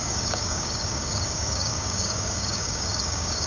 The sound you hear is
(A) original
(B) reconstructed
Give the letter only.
B